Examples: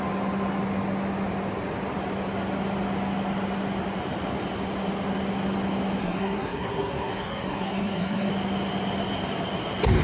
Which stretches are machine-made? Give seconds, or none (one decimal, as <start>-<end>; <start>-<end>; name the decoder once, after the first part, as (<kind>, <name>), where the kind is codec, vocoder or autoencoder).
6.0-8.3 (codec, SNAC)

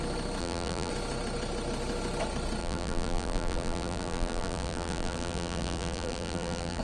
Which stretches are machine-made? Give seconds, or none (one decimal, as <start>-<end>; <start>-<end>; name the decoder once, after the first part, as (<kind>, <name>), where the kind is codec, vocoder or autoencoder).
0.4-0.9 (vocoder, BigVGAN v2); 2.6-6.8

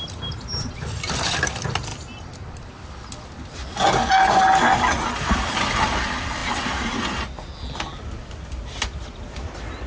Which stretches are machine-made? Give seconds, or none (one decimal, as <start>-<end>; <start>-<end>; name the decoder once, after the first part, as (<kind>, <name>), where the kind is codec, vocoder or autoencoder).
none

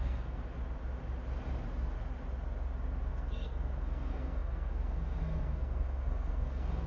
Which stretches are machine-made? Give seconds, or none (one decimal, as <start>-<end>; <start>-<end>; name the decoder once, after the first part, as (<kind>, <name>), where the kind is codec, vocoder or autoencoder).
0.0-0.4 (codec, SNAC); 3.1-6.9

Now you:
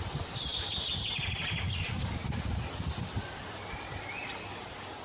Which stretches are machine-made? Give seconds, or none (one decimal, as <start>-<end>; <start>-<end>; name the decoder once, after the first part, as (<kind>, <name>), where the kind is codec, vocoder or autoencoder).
0.5-1.2 (vocoder, BigVGAN v2); 2.2-3.2

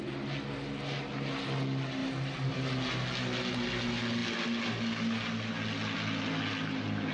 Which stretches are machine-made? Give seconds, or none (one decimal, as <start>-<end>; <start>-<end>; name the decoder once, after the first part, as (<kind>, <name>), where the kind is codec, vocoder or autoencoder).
none

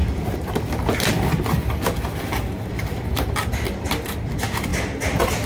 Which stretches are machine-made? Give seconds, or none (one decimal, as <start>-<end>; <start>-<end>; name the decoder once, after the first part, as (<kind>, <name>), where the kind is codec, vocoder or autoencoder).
none

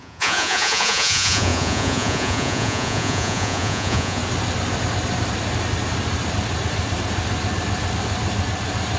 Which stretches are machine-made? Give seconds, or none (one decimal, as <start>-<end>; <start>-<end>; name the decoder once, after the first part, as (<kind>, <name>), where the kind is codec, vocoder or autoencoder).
0.0-4.2 (vocoder, Vocos)